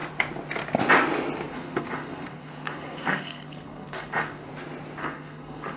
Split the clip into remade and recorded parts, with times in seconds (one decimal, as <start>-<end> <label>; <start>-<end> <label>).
0.0-1.5 recorded; 1.5-4.5 remade; 4.5-5.0 recorded; 5.0-5.8 remade